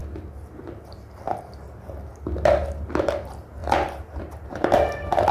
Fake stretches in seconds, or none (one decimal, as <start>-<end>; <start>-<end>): 2.6-5.3